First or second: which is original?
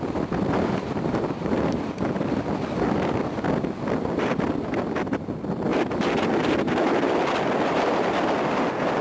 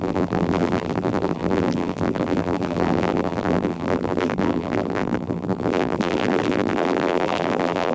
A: first